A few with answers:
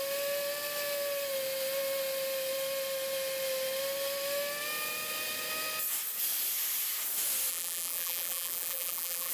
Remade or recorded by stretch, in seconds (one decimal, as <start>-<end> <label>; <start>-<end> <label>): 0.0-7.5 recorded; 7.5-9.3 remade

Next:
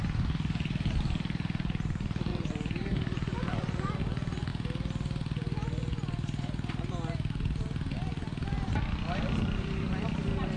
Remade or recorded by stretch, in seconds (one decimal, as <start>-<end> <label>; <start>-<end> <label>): 0.0-4.5 remade; 4.5-9.2 recorded; 9.2-10.6 remade

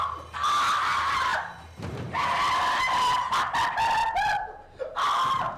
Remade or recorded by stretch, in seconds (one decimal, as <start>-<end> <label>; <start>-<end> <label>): 0.0-1.3 recorded; 1.3-2.4 remade; 2.4-5.6 recorded

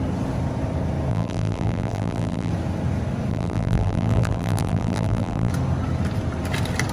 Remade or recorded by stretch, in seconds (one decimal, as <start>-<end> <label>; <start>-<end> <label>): 0.0-1.1 recorded; 1.1-2.5 remade; 2.5-3.3 recorded; 3.3-5.5 remade; 5.5-6.9 recorded